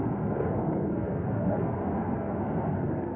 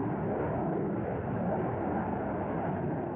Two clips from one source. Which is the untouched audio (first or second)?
second